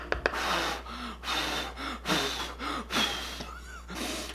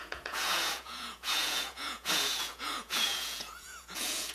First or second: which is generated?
second